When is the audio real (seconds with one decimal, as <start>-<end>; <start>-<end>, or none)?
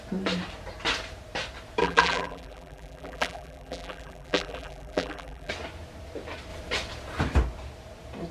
0.0-1.8; 5.5-8.3